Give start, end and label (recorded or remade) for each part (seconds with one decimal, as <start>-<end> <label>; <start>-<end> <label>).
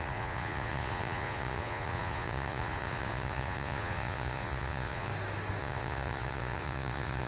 0.0-5.1 remade; 5.1-5.6 recorded; 5.6-7.3 remade